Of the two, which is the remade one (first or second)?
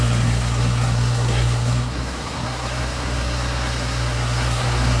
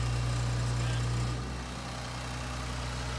first